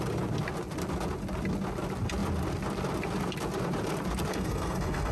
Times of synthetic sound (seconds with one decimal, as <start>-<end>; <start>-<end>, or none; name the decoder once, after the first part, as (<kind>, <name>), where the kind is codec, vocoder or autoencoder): 4.3-5.1 (codec, SNAC)